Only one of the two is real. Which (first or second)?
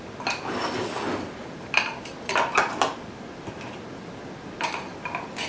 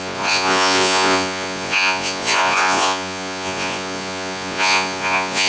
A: first